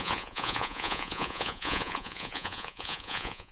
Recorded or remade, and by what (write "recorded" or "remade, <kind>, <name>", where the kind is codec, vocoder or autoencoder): remade, vocoder, Vocos